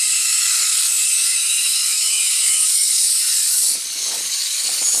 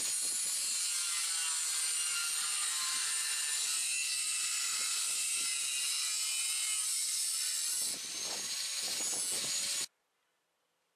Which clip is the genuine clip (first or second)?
second